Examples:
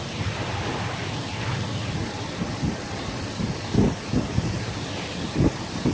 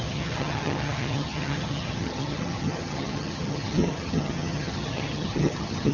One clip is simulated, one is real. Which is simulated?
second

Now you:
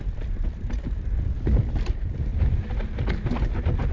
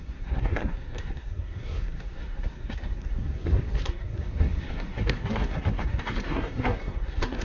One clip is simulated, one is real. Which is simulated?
second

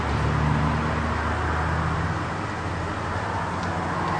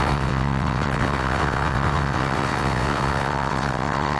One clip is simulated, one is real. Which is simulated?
second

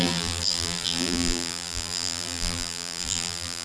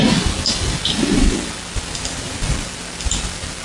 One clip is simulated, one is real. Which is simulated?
first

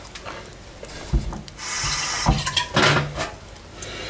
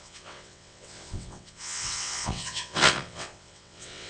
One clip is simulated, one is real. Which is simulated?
second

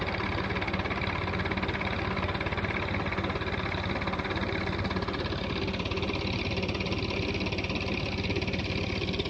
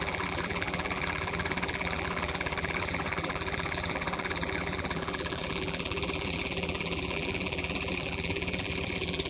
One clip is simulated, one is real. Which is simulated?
second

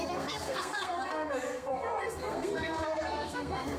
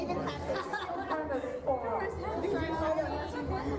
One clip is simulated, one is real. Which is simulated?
first